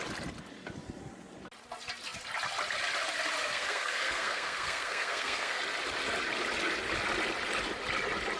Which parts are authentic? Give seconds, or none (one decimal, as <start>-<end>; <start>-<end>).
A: 0.0-3.4; 5.6-8.4